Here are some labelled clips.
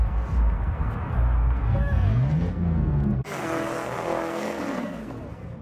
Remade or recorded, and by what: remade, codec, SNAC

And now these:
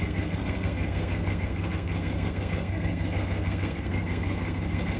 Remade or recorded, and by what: remade, codec, SNAC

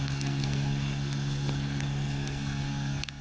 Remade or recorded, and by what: remade, codec, SNAC